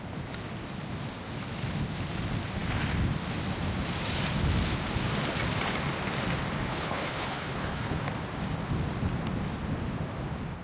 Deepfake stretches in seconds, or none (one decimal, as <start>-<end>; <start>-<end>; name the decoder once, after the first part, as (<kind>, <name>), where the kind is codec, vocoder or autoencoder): 6.7-8.0 (codec, HILCodec)